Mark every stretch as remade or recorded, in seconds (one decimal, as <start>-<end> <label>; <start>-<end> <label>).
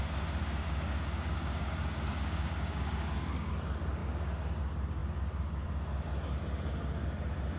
0.0-0.4 recorded; 0.4-3.5 remade; 3.5-7.6 recorded